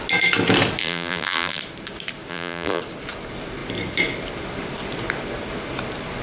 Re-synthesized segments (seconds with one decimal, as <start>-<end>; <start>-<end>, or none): 0.8-1.6; 2.3-2.8